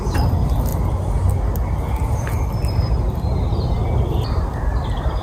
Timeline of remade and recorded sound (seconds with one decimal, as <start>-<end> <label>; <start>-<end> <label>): 0.0-4.1 recorded; 4.1-4.6 remade; 4.6-5.2 recorded